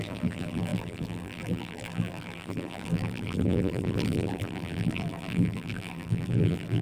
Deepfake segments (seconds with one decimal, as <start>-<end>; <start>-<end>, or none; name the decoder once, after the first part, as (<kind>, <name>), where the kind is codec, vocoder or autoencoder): 0.0-6.8 (vocoder, BigVGAN v2)

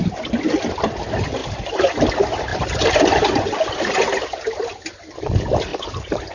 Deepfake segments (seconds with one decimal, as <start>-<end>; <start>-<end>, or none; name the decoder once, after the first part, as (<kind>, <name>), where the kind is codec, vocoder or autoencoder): 1.4-2.1 (vocoder, BigVGAN v2); 2.5-3.0; 5.7-6.3

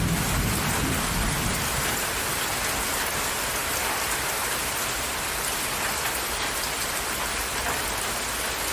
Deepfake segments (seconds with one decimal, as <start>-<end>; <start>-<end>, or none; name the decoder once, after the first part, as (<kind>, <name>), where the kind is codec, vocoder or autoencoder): 3.6-4.3 (vocoder, BigVGAN v2)

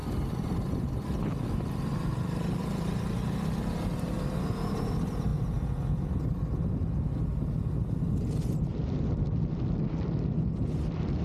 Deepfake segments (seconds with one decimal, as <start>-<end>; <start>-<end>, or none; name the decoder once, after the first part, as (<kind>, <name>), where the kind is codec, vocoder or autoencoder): none

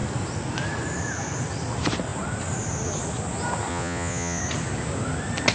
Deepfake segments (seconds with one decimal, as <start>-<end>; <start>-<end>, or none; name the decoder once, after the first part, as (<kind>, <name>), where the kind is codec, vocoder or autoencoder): 3.7-4.4 (vocoder, Vocos)